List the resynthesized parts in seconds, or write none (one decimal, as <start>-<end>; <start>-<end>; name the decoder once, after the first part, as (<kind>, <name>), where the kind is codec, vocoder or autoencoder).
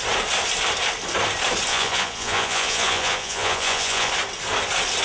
1.7-4.1 (vocoder, Vocos)